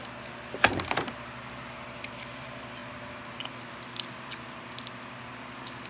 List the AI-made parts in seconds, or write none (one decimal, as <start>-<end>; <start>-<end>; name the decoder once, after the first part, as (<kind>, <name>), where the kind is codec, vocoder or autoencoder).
none